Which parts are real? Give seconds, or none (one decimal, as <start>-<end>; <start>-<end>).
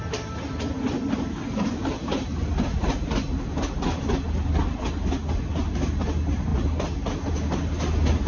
0.0-8.3